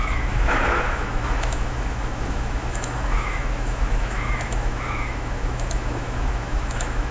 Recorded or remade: remade